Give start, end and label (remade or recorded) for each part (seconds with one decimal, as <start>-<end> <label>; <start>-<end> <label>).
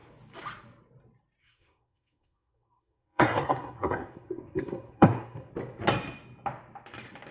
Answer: 0.0-1.4 recorded; 1.4-5.5 remade; 5.5-7.3 recorded